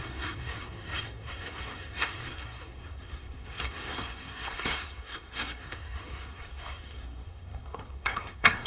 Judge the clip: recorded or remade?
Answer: remade